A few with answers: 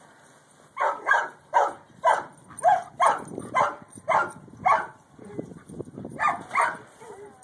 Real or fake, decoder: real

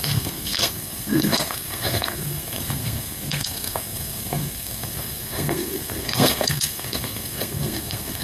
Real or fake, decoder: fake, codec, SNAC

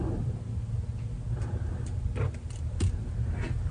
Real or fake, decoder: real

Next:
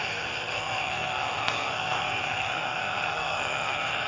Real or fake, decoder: fake, codec, SNAC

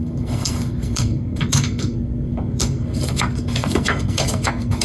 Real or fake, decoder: fake, codec, SNAC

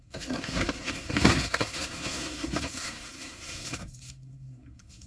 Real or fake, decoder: fake, codec, SNAC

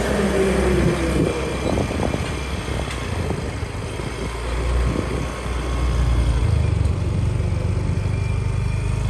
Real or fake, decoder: real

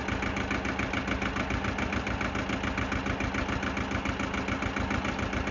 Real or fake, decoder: real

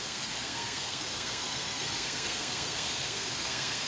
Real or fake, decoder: fake, codec, SNAC